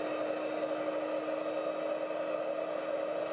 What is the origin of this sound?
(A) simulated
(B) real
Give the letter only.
B